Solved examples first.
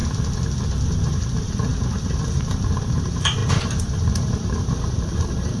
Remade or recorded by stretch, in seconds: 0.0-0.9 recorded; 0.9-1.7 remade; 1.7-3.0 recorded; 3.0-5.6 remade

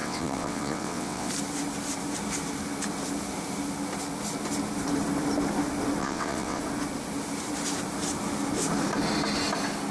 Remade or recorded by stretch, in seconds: 0.0-1.3 remade; 1.3-6.0 recorded; 6.0-6.6 remade; 6.6-9.9 recorded

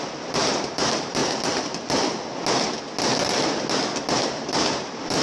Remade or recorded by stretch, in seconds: 0.0-1.2 remade; 1.2-4.3 recorded; 4.3-5.2 remade

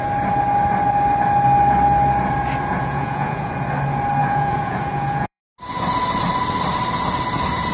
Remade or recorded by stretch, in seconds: 0.0-2.7 recorded; 2.7-3.5 remade; 3.5-4.2 recorded; 4.2-5.4 remade; 5.4-7.7 recorded

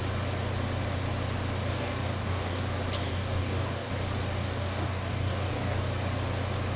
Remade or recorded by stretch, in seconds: 0.0-1.7 recorded; 1.7-2.6 remade; 2.6-3.1 recorded; 3.1-3.9 remade; 3.9-4.4 recorded; 4.4-5.8 remade; 5.8-6.8 recorded

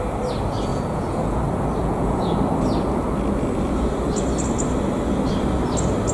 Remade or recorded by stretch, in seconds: 0.0-0.7 recorded; 0.7-1.4 remade; 1.4-1.8 recorded; 1.8-2.4 remade; 2.4-6.1 recorded